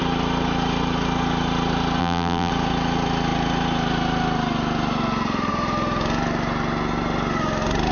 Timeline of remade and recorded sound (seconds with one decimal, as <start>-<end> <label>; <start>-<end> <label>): 0.0-2.0 recorded; 2.0-2.5 remade; 2.5-7.9 recorded